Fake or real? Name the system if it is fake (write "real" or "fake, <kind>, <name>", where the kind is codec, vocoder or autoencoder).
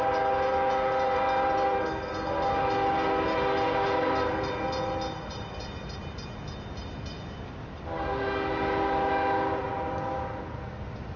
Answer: real